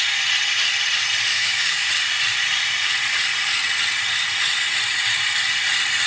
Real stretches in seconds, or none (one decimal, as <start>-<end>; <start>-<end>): 0.0-1.3; 1.9-6.1